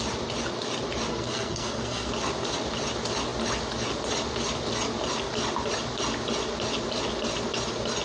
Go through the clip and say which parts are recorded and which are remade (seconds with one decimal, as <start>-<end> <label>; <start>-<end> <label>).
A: 0.0-1.1 recorded; 1.1-2.1 remade; 2.1-8.0 recorded